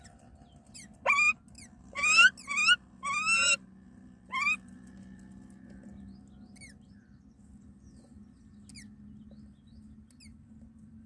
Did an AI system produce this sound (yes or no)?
no